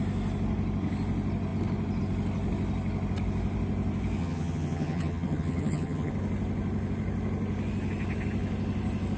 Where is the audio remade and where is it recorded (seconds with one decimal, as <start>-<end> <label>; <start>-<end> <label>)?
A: 0.0-4.2 recorded; 4.2-6.1 remade; 6.1-9.2 recorded